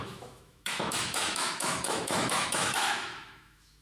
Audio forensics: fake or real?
fake